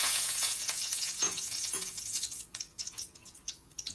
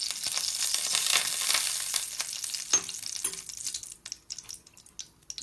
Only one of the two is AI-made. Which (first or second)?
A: first